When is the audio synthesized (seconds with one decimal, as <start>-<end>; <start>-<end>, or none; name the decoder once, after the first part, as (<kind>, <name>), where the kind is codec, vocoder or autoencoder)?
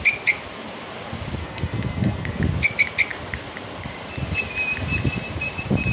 1.4-2.4 (codec, SNAC)